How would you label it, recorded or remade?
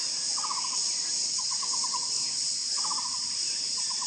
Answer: remade